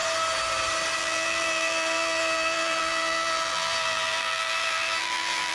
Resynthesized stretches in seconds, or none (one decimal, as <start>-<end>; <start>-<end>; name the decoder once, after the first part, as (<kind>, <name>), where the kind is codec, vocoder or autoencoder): 1.0-5.5 (vocoder, BigVGAN v2)

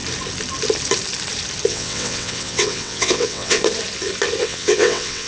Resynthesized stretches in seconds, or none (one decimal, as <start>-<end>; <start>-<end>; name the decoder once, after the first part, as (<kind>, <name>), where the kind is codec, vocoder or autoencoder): 1.7-3.6 (vocoder, WaveNeXt); 4.4-5.3

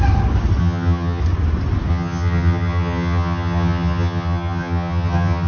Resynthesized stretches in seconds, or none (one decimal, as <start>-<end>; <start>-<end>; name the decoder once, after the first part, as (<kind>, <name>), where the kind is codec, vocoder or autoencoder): 0.6-1.2 (vocoder, HiFi-GAN); 1.9-5.5

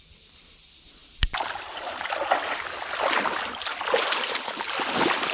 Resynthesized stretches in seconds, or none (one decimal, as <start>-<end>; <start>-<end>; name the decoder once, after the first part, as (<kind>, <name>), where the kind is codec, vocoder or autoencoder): none

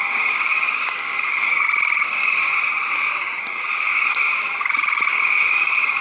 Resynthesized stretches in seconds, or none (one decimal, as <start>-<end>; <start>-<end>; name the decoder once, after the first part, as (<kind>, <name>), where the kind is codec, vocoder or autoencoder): 0.0-2.5 (codec, DAC); 3.4-6.0

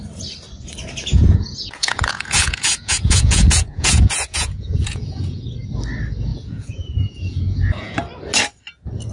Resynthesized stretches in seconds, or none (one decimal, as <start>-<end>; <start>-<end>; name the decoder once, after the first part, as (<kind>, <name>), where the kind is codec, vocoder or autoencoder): 1.1-5.5 (vocoder, Vocos); 6.3-8.0

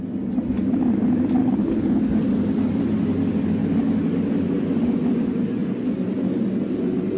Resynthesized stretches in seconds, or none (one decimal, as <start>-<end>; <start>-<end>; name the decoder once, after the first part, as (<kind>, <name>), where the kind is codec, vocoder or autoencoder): 1.4-2.0 (codec, HILCodec)